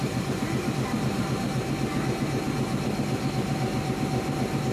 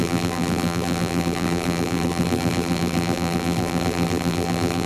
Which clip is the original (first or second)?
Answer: first